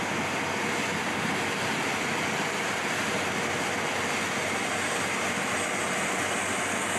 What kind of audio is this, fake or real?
real